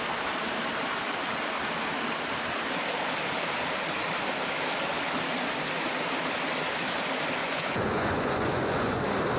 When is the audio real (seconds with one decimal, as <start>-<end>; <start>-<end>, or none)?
0.0-7.4; 9.0-9.4